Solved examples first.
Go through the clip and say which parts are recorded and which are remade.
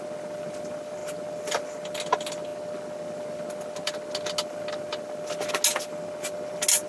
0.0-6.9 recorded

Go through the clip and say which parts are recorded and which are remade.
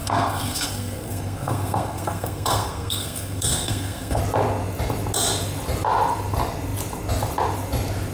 0.0-4.2 remade; 4.2-8.1 recorded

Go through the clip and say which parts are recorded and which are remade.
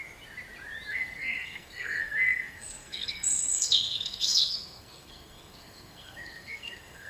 0.0-0.9 recorded; 0.9-7.1 remade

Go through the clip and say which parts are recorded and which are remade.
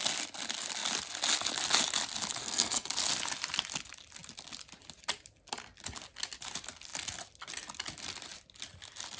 0.0-2.4 recorded; 2.4-2.9 remade; 2.9-9.2 recorded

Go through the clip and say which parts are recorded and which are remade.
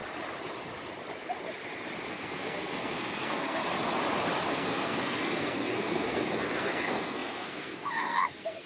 0.0-2.1 recorded; 2.1-3.6 remade; 3.6-4.5 recorded; 4.5-8.7 remade